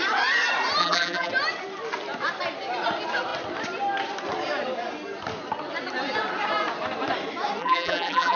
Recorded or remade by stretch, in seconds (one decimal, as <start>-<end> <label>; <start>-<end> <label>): 0.0-0.8 recorded; 0.8-1.3 remade; 1.3-7.6 recorded; 7.6-8.4 remade